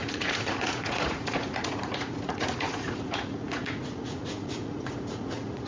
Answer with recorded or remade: remade